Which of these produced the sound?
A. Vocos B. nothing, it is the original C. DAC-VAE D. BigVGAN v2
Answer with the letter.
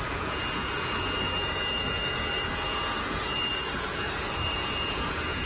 A